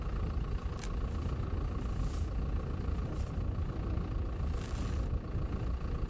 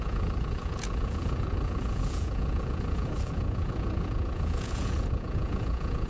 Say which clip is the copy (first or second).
second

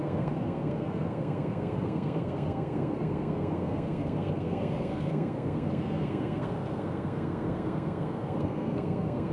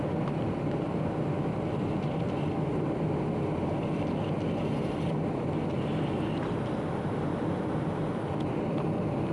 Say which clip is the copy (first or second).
first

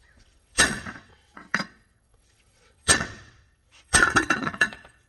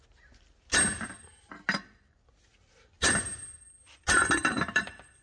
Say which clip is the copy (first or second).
first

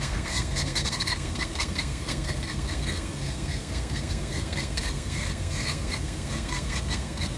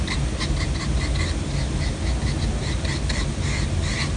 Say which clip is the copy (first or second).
first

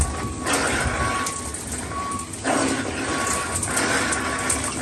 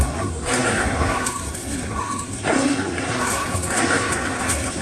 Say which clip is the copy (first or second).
second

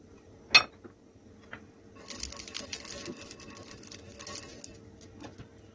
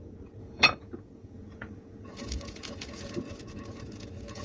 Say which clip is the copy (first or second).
second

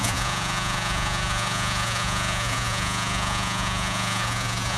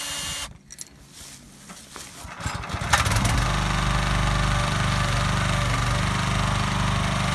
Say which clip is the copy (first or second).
first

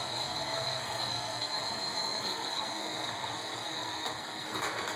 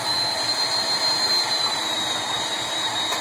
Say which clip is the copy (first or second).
first